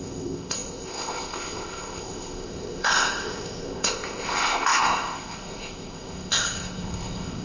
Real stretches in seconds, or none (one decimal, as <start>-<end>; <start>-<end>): none